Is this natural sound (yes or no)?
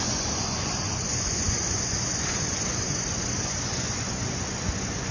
no